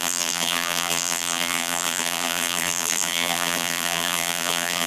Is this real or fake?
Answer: fake